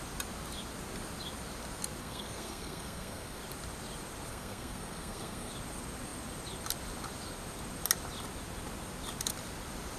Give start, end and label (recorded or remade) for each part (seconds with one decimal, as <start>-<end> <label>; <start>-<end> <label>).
0.0-2.0 recorded; 2.0-3.4 remade; 3.4-4.3 recorded; 4.3-5.5 remade; 5.5-10.0 recorded